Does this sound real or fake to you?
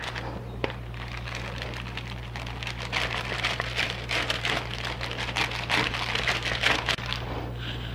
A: fake